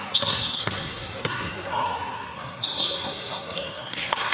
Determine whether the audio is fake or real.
fake